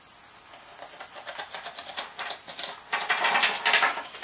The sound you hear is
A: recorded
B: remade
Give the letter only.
A